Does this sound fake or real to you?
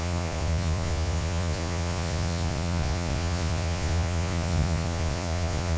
fake